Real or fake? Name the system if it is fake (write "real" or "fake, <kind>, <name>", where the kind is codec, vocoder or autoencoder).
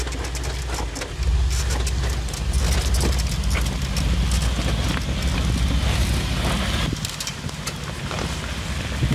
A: real